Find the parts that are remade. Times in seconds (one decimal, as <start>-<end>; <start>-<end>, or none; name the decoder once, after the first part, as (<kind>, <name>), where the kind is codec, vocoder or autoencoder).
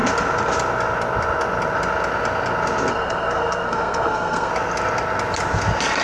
2.9-4.5 (codec, SNAC)